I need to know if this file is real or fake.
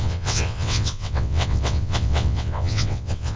fake